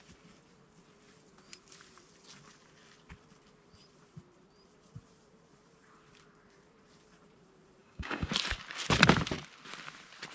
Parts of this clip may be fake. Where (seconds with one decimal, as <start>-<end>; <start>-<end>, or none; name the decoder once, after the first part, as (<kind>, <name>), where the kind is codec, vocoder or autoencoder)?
7.8-8.3 (codec, DAC)